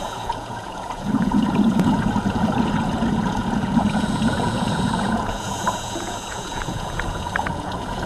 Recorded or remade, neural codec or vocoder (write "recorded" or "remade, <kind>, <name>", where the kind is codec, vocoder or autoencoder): remade, vocoder, Vocos